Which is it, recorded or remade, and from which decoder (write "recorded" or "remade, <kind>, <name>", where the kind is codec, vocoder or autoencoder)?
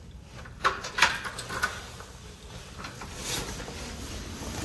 recorded